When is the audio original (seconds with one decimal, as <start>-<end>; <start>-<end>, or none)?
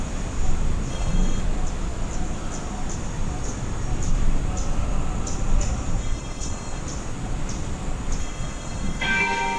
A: 0.0-0.9; 1.4-6.0; 6.8-8.2